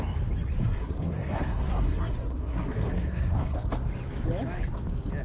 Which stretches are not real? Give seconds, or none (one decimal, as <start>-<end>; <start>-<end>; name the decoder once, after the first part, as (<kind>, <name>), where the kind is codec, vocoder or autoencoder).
0.6-3.7 (codec, SNAC)